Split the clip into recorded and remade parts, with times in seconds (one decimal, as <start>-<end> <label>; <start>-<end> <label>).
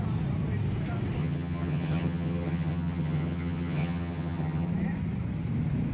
0.0-1.2 recorded; 1.2-4.7 remade; 4.7-5.9 recorded